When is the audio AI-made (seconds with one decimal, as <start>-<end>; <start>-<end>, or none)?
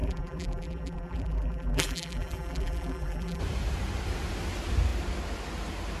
0.0-3.4